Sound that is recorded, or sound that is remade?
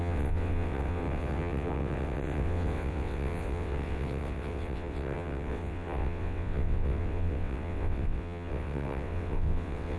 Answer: remade